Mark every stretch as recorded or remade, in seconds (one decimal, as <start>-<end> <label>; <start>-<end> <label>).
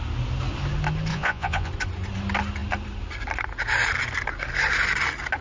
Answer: 0.0-1.1 recorded; 1.1-1.7 remade; 1.7-5.4 recorded